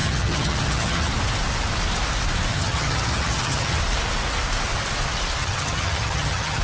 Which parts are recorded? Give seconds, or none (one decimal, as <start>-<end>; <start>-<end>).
1.1-2.5; 3.8-5.4